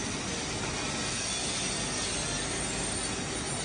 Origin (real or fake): real